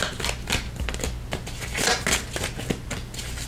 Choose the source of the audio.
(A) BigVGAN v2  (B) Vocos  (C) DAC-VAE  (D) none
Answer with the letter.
D